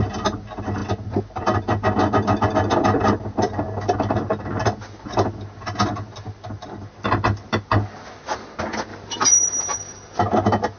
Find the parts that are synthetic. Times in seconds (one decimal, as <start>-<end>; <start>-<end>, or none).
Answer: 8.9-10.2